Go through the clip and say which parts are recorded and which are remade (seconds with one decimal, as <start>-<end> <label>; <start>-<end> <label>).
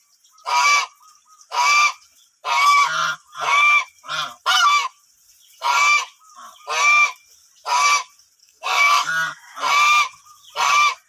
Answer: 0.0-8.4 recorded; 8.4-9.1 remade; 9.1-11.1 recorded